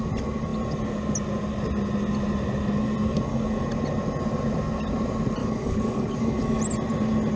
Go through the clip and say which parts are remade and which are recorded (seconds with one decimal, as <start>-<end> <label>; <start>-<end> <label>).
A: 0.0-5.4 recorded; 5.4-6.6 remade; 6.6-7.4 recorded